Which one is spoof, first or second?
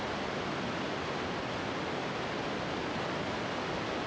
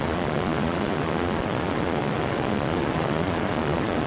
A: second